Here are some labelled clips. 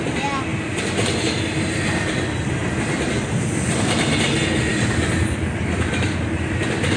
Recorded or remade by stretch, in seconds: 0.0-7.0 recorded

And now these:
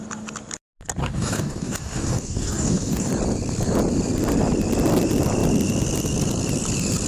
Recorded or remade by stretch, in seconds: 0.0-1.0 recorded; 1.0-3.1 remade; 3.1-7.1 recorded

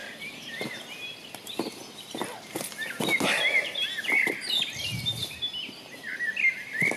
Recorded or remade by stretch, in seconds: 0.0-0.8 remade; 0.8-7.0 recorded

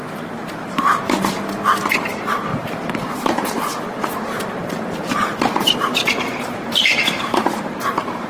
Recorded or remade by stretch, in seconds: 0.0-0.6 recorded; 0.6-8.3 remade

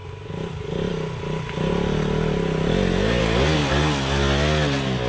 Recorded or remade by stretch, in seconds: 0.0-0.9 remade; 0.9-5.1 recorded